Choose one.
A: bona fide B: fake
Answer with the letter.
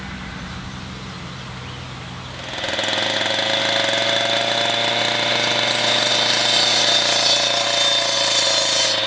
A